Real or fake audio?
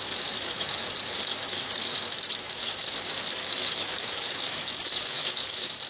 fake